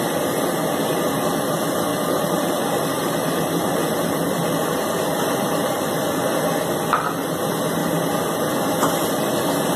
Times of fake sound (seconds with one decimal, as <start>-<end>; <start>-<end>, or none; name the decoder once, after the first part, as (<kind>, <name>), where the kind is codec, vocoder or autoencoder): 1.9-6.0 (vocoder, BigVGAN v2); 7.8-8.5